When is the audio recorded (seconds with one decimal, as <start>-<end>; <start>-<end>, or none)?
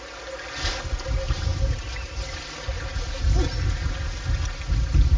0.0-5.2